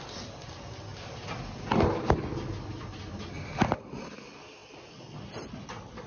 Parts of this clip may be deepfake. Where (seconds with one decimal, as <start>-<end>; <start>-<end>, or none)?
none